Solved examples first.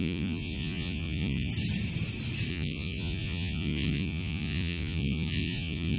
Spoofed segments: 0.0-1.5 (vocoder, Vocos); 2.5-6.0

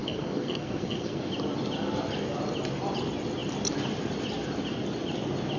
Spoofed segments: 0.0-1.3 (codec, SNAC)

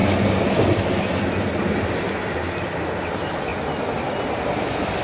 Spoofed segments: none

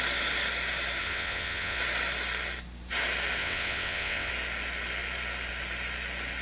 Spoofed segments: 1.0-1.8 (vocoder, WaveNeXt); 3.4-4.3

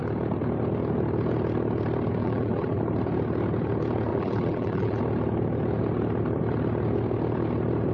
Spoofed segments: 2.2-2.8 (vocoder, BigVGAN v2); 4.1-5.0

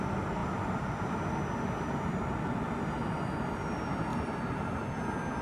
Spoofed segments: 0.4-3.4 (vocoder, BigVGAN v2); 4.1-4.6

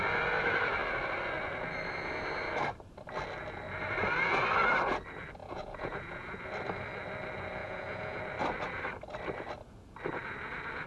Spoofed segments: 5.4-6.4 (vocoder, Vocos); 7.6-8.2

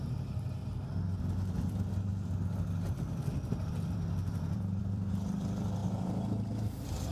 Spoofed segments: 0.0-0.6 (vocoder, BigVGAN v2); 1.2-5.8; 6.5-7.1